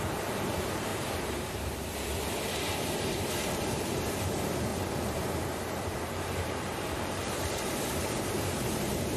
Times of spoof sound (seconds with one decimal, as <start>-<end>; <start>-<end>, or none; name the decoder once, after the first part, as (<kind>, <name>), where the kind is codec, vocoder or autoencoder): 0.9-2.1 (vocoder, BigVGAN v2); 4.7-9.2